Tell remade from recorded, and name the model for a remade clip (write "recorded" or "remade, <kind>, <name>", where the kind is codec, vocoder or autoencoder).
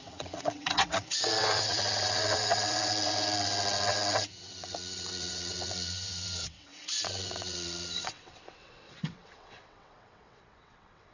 remade, vocoder, WaveNeXt